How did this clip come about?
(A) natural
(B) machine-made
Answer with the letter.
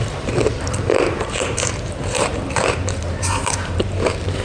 B